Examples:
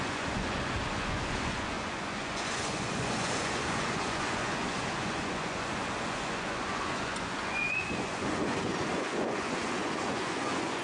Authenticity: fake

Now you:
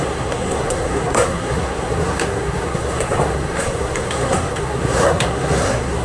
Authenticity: fake